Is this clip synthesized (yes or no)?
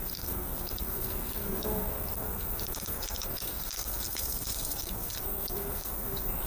yes